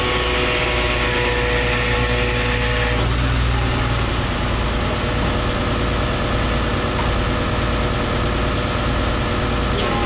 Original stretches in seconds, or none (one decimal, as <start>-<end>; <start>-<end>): 0.0-10.1